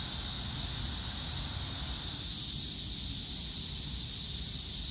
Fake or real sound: real